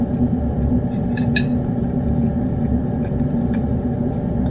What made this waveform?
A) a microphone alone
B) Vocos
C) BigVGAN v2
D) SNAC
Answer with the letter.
C